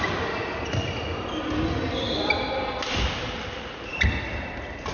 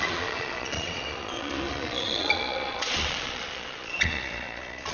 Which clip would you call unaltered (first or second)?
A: first